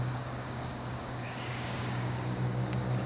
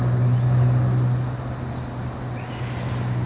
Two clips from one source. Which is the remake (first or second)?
first